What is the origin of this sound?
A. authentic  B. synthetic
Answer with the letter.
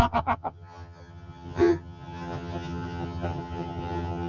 B